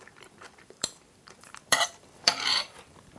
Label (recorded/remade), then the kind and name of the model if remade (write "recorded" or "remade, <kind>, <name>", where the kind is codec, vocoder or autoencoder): remade, vocoder, BigVGAN v2